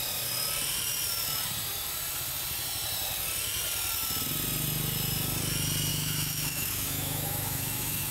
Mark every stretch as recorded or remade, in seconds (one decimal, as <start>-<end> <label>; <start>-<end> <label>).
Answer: 0.0-5.9 recorded; 5.9-8.1 remade